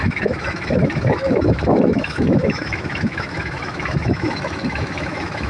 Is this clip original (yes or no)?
no